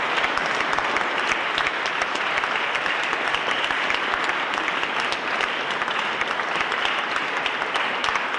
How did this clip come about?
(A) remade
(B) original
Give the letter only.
B